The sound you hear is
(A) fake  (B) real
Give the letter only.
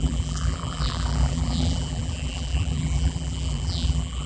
A